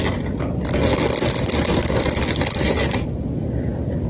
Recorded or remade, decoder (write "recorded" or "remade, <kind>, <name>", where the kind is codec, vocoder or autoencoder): recorded